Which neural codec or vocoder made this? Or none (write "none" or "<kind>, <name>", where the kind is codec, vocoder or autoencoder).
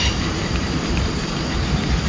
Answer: none